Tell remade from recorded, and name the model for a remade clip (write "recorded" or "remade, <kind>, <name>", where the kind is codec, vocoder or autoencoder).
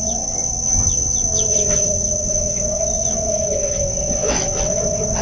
remade, vocoder, WaveNeXt